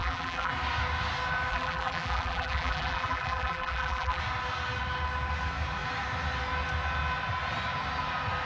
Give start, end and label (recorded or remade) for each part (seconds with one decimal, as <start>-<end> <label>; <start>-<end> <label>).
0.0-0.5 remade; 0.5-1.5 recorded; 1.5-4.2 remade; 4.2-8.5 recorded